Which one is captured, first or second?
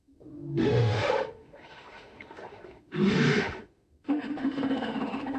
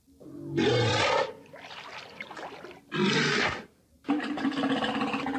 second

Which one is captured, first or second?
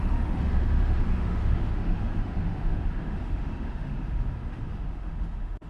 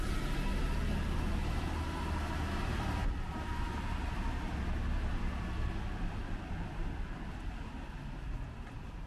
second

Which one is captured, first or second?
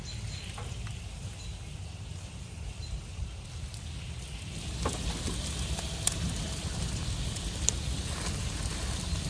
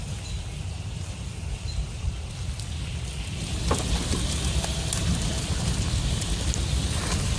first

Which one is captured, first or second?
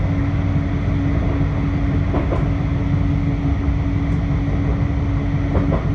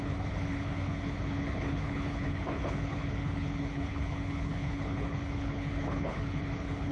first